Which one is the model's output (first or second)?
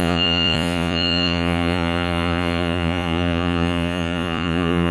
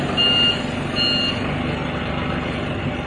first